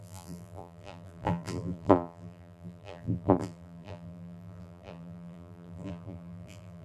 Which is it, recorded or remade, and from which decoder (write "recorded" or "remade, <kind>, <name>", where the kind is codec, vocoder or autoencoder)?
remade, vocoder, BigVGAN v2